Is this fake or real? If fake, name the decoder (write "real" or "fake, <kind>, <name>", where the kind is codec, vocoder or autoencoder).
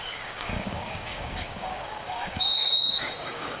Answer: fake, codec, DAC